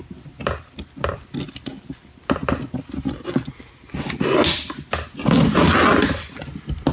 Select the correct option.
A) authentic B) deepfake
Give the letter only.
A